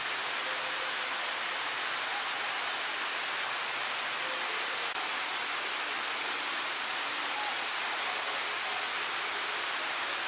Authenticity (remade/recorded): recorded